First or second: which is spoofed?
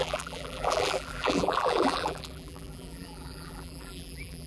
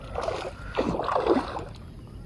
first